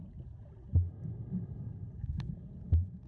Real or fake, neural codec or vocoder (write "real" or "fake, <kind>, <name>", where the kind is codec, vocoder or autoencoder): real